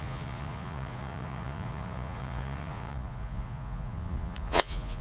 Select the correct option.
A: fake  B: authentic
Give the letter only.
A